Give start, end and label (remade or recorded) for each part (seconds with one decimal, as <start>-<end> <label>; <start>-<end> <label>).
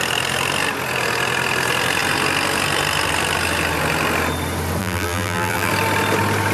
0.0-4.8 recorded; 4.8-5.7 remade; 5.7-6.5 recorded